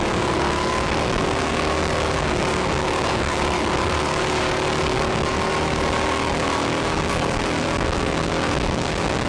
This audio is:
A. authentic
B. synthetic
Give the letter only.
B